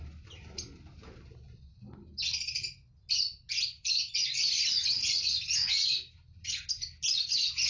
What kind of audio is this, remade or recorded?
recorded